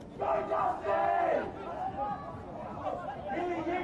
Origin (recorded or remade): recorded